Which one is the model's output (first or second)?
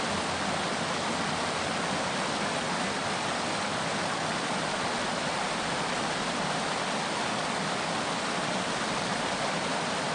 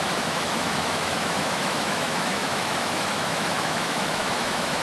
second